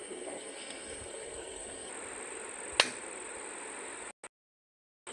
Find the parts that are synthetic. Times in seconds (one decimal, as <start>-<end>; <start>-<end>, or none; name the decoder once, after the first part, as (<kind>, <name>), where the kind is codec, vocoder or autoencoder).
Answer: 0.0-1.9 (codec, SNAC)